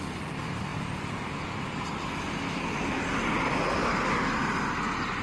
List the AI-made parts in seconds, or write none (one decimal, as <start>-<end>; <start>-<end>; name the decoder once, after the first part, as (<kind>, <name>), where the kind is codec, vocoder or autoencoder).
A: none